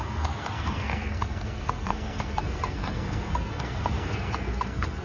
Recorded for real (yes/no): no